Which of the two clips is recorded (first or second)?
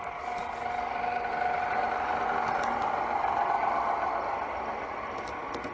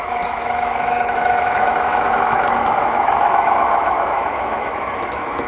first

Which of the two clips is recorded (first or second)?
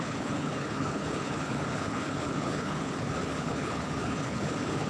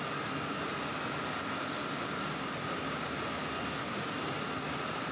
second